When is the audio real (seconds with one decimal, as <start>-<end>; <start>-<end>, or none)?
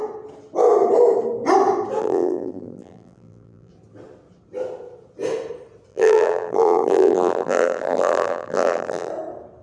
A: 0.0-2.0; 3.7-5.9; 9.1-9.6